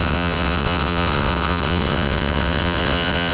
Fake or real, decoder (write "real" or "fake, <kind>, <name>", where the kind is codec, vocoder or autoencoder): fake, vocoder, WaveNeXt